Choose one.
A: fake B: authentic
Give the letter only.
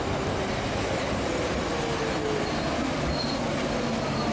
B